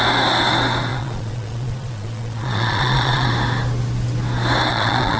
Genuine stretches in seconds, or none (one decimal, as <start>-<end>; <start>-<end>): 0.0-0.9; 3.3-4.7